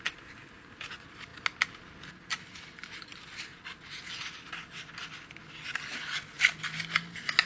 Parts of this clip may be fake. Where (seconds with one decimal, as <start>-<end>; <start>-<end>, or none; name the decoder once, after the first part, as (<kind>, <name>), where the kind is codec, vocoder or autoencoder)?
none